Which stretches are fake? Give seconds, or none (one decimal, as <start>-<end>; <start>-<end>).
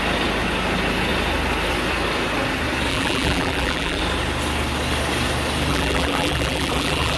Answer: 2.9-4.0; 5.7-7.2